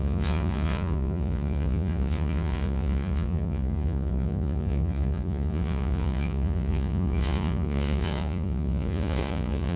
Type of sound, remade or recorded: remade